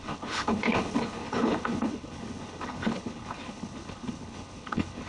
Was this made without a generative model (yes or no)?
no